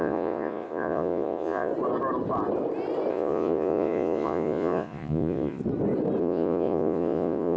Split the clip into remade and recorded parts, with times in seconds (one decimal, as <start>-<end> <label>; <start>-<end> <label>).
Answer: 0.0-1.7 remade; 1.7-3.1 recorded; 3.1-5.6 remade; 5.6-6.2 recorded; 6.2-7.6 remade